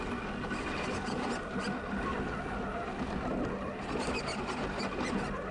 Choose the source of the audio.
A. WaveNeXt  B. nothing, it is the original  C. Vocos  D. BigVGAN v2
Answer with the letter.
B